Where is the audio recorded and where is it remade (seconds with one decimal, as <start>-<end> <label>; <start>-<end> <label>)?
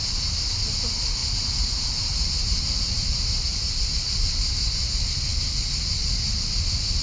0.0-1.2 recorded; 1.2-3.9 remade; 3.9-7.0 recorded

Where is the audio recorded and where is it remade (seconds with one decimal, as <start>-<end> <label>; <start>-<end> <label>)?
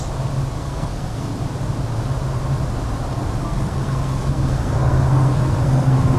0.0-0.6 recorded; 0.6-1.3 remade; 1.3-3.4 recorded; 3.4-6.2 remade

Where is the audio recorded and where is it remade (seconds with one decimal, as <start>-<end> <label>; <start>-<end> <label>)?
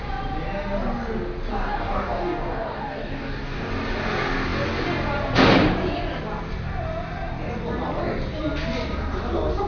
0.0-1.5 recorded; 1.5-3.7 remade; 3.7-9.7 recorded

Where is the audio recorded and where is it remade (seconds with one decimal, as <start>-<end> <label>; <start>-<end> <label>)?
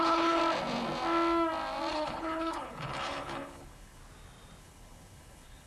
0.0-0.4 remade; 0.4-1.9 recorded; 1.9-4.0 remade; 4.0-4.6 recorded; 4.6-5.7 remade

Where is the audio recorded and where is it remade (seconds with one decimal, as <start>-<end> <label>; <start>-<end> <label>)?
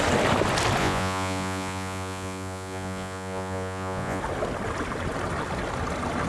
0.0-0.8 recorded; 0.8-4.2 remade; 4.2-6.3 recorded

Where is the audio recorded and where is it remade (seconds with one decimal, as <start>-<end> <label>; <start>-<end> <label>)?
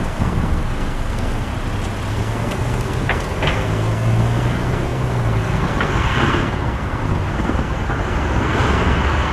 0.0-1.5 remade; 1.5-2.1 recorded; 2.1-9.3 remade